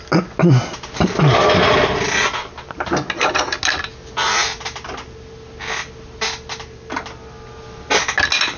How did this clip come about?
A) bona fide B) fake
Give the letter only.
A